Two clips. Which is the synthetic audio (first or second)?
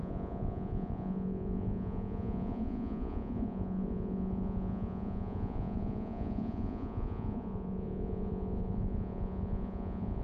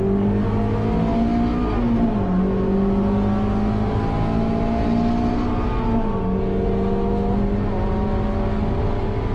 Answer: first